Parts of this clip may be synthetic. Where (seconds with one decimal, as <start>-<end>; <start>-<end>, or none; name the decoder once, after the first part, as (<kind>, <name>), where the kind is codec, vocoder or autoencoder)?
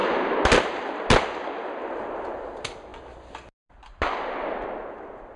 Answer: none